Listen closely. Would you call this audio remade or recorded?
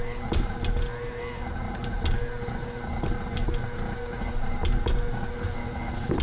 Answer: recorded